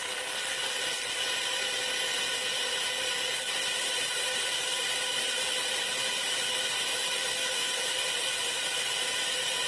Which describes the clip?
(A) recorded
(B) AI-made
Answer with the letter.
A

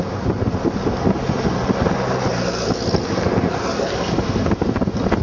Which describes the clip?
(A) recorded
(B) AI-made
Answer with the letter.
A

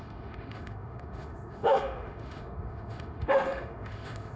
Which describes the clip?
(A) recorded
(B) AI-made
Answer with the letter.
B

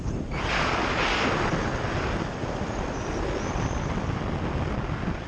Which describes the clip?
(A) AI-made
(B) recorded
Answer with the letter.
B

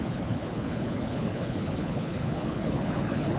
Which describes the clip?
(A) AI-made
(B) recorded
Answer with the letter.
A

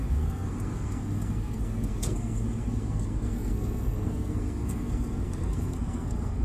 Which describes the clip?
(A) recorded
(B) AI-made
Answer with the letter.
B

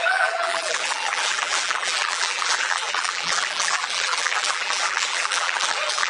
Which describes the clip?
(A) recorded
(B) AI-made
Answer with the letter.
B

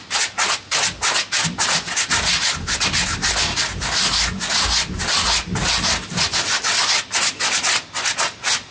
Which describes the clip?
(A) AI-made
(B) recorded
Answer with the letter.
B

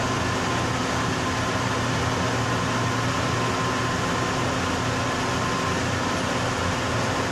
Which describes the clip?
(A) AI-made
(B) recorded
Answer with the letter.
B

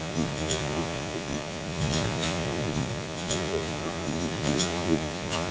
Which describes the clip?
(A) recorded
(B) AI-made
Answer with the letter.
B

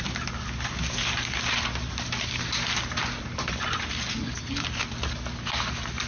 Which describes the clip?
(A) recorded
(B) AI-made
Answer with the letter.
A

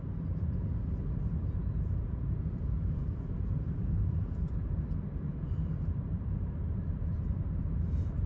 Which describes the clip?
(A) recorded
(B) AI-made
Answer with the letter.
B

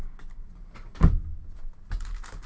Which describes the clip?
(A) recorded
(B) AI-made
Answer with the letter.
A